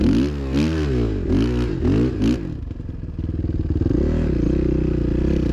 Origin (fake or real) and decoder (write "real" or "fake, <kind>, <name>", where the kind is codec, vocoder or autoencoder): real